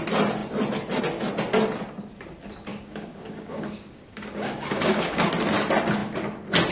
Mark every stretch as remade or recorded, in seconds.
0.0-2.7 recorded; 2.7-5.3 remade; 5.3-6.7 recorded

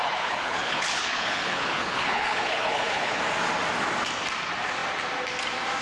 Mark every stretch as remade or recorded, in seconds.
0.0-3.2 remade; 3.2-5.8 recorded

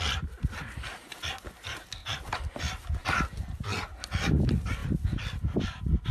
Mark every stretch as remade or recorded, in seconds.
0.0-2.0 recorded; 2.0-2.6 remade; 2.6-6.1 recorded

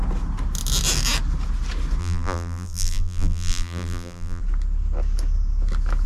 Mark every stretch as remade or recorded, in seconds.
0.0-2.0 recorded; 2.0-4.4 remade; 4.4-6.1 recorded

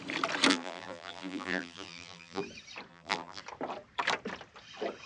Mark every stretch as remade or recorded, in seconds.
0.0-0.5 recorded; 0.5-2.4 remade; 2.4-2.9 recorded; 2.9-3.4 remade; 3.4-5.1 recorded

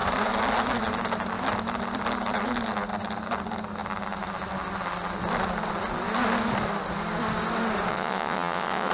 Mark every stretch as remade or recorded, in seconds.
0.0-7.9 recorded; 7.9-8.9 remade

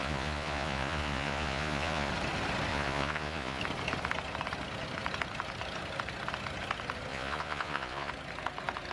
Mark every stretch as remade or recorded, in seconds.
0.0-2.1 remade; 2.1-2.7 recorded; 2.7-3.6 remade; 3.6-7.1 recorded; 7.1-8.1 remade; 8.1-8.9 recorded